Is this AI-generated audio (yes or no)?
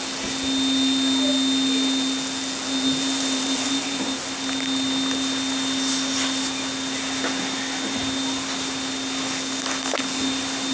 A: no